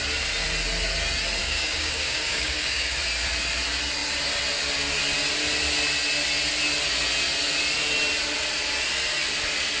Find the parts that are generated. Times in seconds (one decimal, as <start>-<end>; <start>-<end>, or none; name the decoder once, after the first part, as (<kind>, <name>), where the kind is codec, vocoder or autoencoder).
1.4-2.9 (codec, DAC)